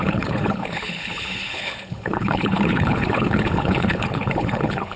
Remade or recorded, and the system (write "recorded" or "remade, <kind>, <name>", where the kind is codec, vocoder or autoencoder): remade, codec, HILCodec